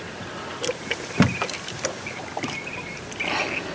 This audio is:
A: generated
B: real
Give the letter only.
B